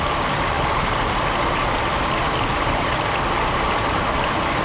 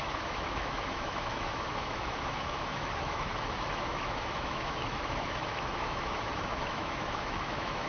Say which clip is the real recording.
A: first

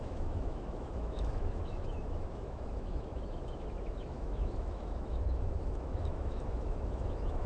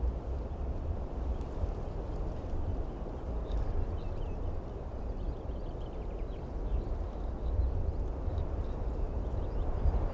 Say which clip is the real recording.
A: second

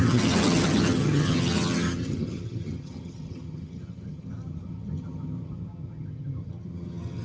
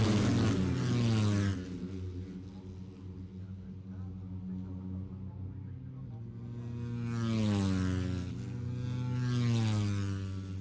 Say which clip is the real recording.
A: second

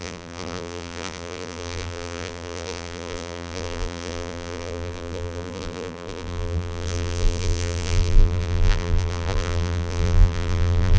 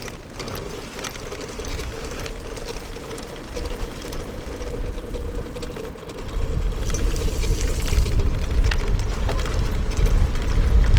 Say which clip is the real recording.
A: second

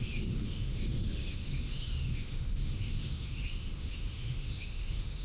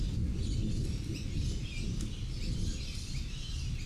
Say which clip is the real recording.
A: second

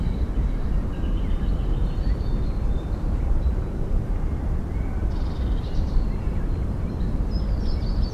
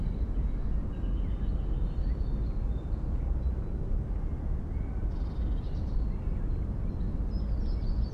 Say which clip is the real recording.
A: second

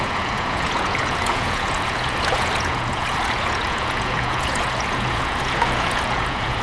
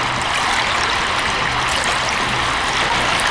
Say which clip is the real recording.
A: second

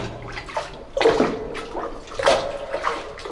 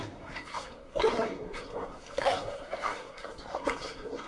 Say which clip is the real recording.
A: first